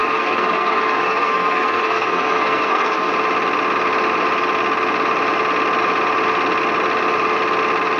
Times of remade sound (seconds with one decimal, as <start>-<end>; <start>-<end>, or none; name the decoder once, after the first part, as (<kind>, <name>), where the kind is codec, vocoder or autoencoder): 0.0-3.1 (codec, SNAC)